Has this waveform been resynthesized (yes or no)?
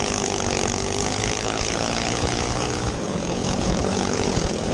yes